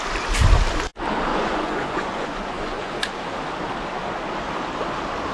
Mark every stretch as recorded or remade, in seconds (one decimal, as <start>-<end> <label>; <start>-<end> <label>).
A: 0.0-1.3 recorded; 1.3-3.1 remade; 3.1-5.3 recorded